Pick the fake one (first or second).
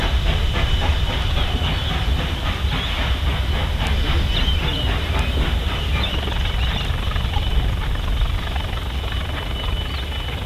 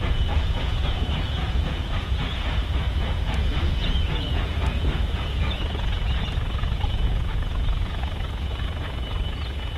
second